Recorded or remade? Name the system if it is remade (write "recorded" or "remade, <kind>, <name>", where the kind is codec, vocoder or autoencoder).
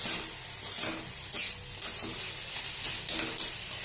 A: recorded